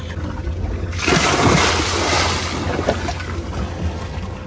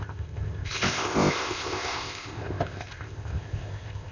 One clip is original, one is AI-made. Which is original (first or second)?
first